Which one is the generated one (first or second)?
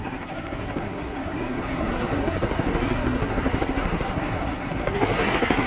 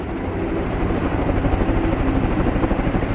first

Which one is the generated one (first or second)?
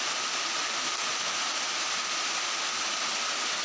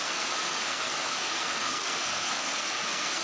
second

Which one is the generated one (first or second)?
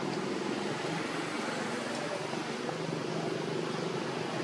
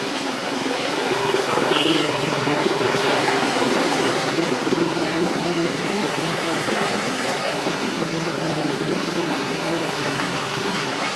second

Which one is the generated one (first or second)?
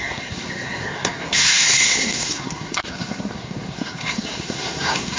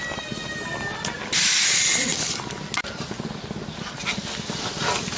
first